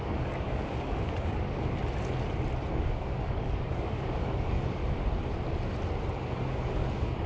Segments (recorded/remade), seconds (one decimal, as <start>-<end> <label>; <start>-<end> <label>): 0.0-1.8 remade; 1.8-2.7 recorded; 2.7-4.8 remade; 4.8-6.1 recorded; 6.1-7.3 remade